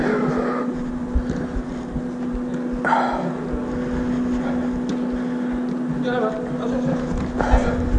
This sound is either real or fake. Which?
real